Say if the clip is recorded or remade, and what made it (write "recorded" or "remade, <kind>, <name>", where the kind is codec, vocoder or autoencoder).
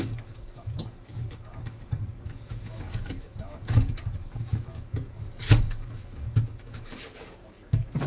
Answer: remade, codec, DAC